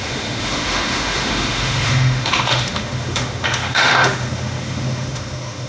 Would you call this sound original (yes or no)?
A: no